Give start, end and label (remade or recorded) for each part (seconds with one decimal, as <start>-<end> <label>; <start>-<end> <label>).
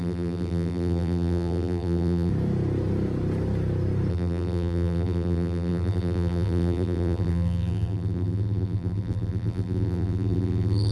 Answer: 0.0-2.3 remade; 2.3-4.1 recorded; 4.1-10.9 remade